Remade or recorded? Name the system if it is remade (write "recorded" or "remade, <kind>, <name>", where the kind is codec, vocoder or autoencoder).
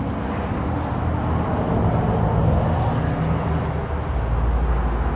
recorded